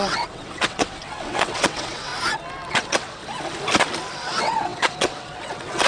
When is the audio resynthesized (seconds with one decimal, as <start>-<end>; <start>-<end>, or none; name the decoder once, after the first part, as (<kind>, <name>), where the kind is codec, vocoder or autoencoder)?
0.0-2.1 (vocoder, WaveNeXt); 2.7-3.2; 4.1-5.9